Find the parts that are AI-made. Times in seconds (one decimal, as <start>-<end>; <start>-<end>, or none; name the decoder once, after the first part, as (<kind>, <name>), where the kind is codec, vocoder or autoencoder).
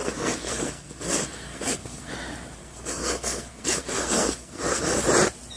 0.0-2.1 (codec, SNAC); 2.6-5.0